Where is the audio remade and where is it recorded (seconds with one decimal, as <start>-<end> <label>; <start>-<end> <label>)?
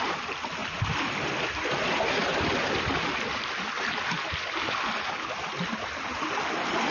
0.0-6.9 recorded